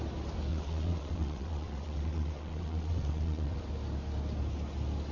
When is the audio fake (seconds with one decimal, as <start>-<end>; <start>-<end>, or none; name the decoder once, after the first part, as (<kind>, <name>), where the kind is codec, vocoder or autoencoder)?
0.5-3.6 (vocoder, WaveNeXt)